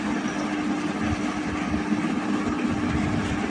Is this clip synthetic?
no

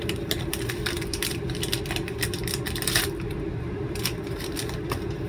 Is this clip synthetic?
yes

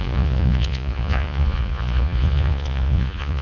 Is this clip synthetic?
yes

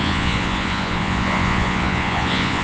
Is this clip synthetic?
yes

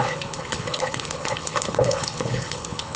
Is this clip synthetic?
yes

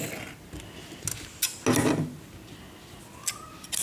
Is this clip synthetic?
no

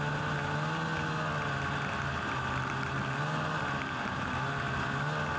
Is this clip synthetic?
no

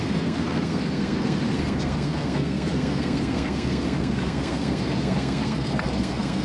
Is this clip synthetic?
yes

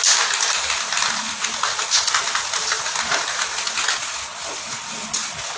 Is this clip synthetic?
no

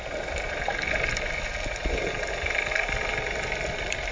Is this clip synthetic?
no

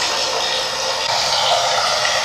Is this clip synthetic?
no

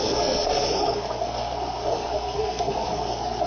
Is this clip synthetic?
yes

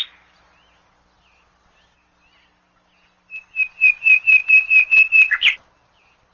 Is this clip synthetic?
no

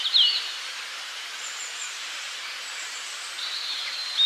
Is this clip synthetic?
yes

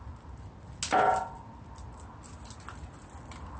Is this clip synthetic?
no